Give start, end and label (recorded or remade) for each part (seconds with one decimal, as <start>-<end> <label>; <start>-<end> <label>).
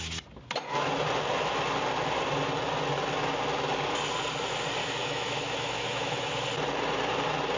0.0-4.8 recorded; 4.8-6.3 remade; 6.3-7.6 recorded